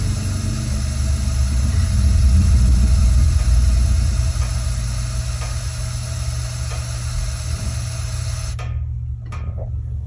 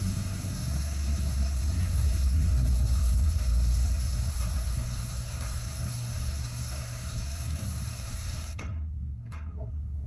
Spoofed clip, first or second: second